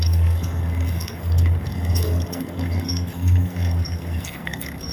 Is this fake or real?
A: fake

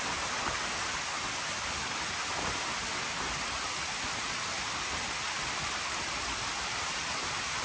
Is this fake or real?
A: real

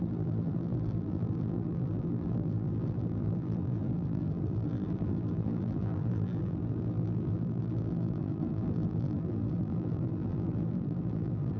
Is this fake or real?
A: fake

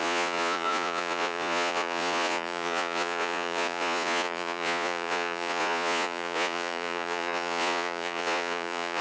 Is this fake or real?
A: fake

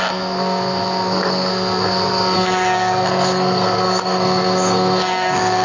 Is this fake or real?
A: fake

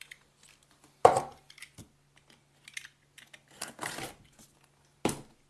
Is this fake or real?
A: real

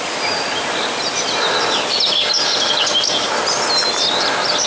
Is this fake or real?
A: real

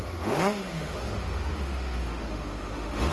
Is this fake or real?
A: fake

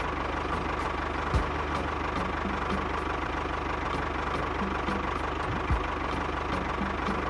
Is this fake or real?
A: real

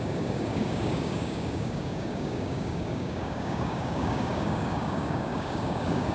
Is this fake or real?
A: fake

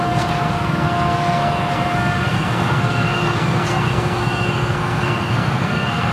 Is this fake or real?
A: fake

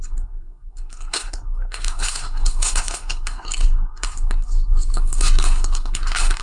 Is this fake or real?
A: fake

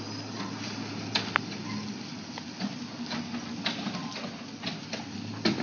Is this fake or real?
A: real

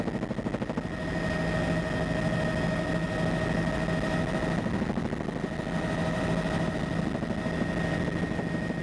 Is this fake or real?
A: real